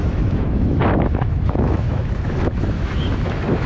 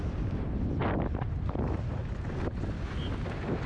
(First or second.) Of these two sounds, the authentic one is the second